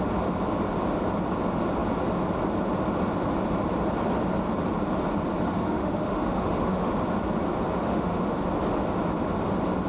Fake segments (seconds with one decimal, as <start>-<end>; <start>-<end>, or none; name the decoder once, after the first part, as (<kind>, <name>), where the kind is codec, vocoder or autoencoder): 5.4-7.0 (autoencoder, DAC-VAE); 7.8-8.4